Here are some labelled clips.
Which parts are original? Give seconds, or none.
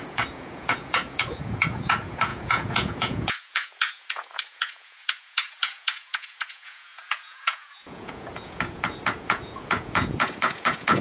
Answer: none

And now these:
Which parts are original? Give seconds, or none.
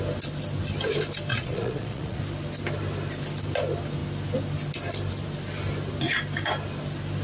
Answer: 0.0-1.3; 2.2-7.2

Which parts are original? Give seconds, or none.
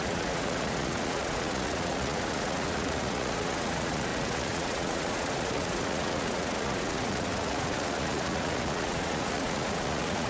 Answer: none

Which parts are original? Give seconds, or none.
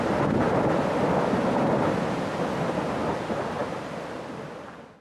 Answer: 0.0-5.0